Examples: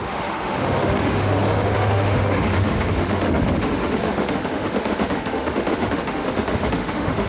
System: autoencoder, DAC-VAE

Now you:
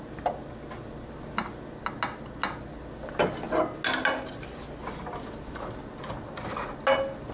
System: none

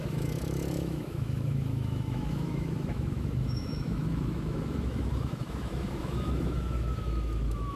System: autoencoder, DAC-VAE